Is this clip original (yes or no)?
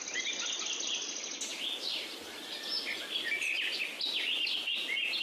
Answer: yes